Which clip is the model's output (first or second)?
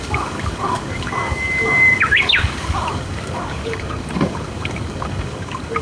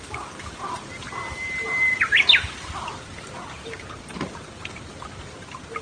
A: first